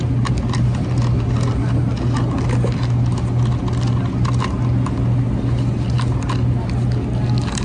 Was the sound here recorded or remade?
recorded